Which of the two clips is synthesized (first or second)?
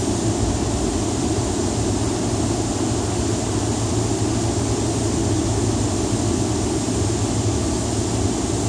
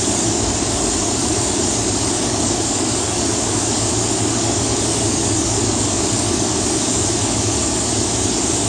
second